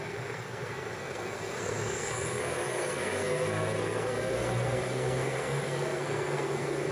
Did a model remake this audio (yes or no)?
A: yes